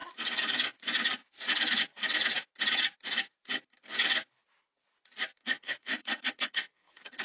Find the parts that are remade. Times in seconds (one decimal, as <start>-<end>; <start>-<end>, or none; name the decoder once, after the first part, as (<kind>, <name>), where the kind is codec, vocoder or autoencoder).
5.4-7.2 (codec, SNAC)